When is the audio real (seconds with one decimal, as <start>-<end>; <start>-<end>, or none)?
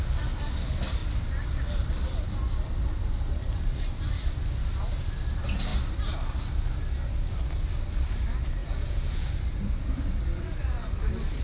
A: 0.0-8.6; 9.3-11.4